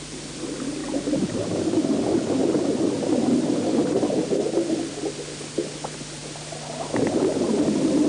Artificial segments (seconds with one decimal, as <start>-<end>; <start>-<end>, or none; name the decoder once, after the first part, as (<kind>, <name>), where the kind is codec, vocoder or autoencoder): none